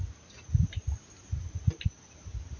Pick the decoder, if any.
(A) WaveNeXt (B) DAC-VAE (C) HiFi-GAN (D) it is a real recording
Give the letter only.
D